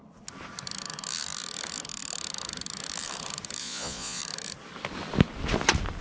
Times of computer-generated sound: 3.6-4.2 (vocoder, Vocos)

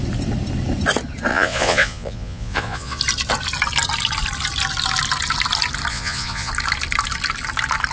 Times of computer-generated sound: 1.3-3.0 (vocoder, Vocos); 5.9-6.5

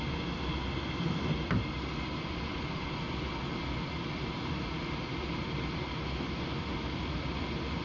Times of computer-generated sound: none

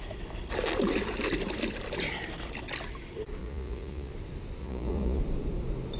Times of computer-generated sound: 3.4-4.1 (vocoder, Vocos); 4.6-5.2

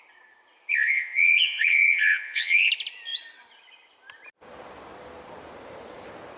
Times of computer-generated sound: 0.7-2.7 (vocoder, Vocos)

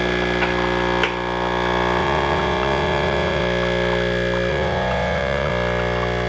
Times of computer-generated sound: 2.0-3.4 (vocoder, Vocos); 4.5-5.5

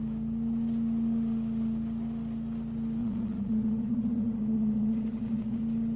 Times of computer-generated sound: 3.0-5.6 (vocoder, Vocos)

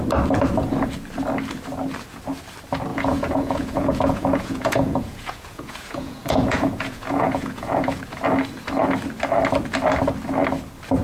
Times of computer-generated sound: 2.9-8.0 (vocoder, Vocos)